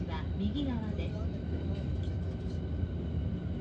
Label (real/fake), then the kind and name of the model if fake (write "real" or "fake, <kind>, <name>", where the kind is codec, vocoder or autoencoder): real